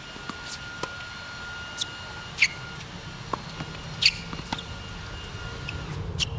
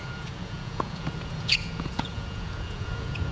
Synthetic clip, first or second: second